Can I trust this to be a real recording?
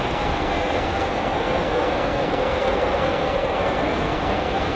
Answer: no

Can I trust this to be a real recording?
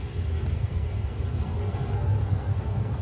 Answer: no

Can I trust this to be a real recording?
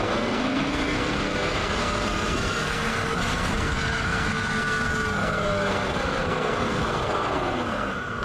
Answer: no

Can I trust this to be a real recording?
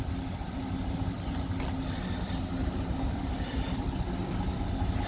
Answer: yes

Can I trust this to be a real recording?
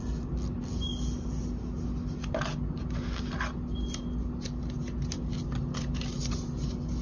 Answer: yes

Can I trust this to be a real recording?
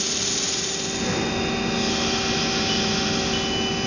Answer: yes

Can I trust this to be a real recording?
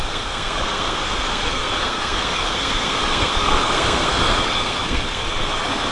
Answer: no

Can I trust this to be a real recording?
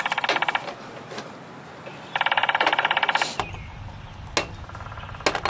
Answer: yes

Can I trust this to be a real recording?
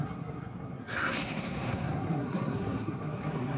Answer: no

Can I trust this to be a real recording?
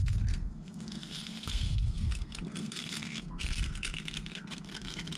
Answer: no